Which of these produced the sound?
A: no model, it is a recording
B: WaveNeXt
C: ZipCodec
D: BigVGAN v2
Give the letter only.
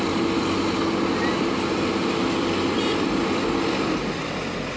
A